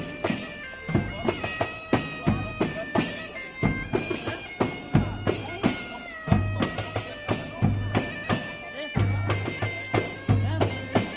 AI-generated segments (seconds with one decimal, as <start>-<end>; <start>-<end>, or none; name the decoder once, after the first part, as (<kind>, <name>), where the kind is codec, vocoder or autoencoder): none